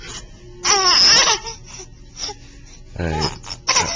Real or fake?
real